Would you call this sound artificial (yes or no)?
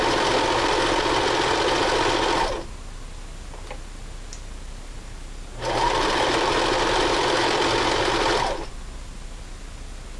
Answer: no